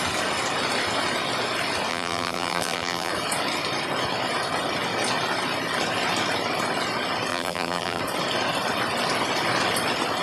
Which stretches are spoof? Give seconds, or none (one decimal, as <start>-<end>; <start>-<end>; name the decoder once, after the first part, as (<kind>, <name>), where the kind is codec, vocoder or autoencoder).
1.9-3.1 (vocoder, BigVGAN v2); 7.3-8.0